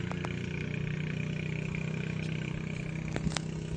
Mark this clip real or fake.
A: real